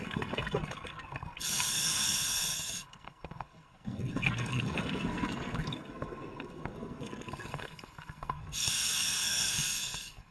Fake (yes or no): yes